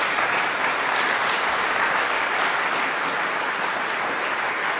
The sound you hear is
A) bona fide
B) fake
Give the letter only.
A